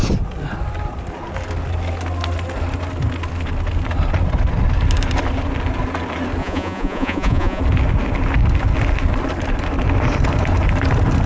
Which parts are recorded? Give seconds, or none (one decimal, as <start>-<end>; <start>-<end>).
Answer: 0.0-6.4; 7.6-11.3